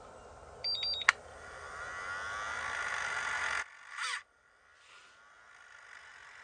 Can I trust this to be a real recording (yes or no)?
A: yes